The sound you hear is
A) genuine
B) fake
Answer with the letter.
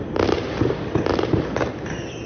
A